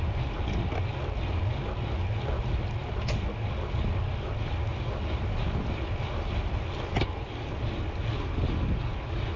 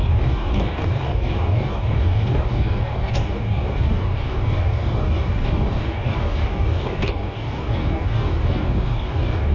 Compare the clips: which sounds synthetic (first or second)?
second